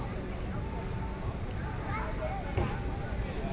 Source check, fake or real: real